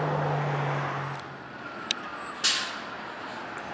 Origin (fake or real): real